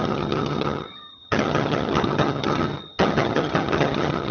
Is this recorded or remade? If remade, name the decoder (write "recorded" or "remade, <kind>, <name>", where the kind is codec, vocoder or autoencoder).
remade, vocoder, HiFi-GAN